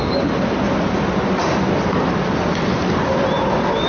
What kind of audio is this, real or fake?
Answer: real